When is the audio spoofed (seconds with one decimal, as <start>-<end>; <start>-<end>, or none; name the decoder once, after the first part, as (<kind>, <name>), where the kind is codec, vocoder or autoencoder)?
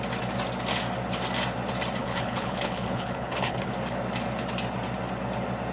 2.0-3.7 (codec, HILCodec)